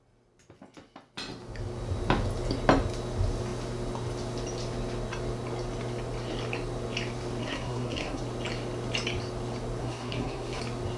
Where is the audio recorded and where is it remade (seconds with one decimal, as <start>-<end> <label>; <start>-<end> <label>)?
0.0-7.4 recorded; 7.4-8.2 remade; 8.2-9.8 recorded; 9.8-10.6 remade; 10.6-11.0 recorded